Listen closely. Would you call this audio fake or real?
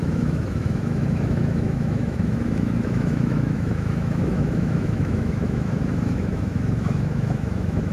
fake